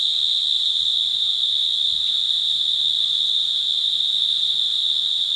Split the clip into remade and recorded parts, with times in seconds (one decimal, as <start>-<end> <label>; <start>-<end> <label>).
0.0-5.4 recorded